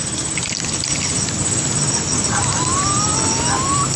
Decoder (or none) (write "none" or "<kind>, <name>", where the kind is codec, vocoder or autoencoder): none